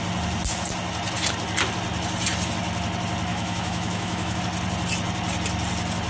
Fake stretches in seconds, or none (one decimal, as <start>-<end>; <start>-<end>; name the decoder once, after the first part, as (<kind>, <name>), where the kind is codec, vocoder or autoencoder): 3.3-4.4 (autoencoder, DAC-VAE)